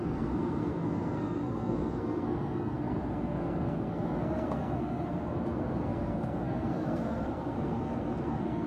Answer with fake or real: fake